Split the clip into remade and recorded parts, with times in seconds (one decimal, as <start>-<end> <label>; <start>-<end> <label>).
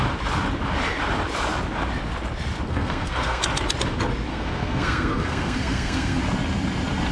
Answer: 0.0-2.7 recorded; 2.7-3.4 remade; 3.4-4.3 recorded; 4.3-6.2 remade; 6.2-7.1 recorded